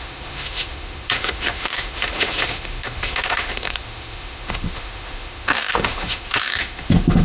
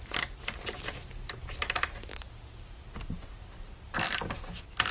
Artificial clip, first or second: first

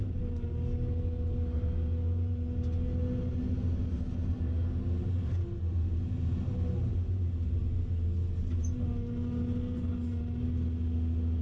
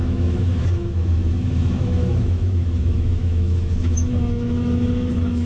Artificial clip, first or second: second